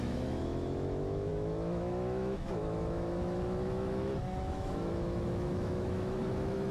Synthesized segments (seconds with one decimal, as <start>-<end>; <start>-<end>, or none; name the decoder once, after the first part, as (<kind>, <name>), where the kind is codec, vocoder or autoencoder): 0.0-6.7 (autoencoder, DAC-VAE)